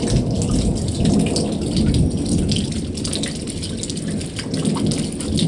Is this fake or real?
real